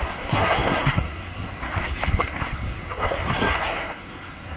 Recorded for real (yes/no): no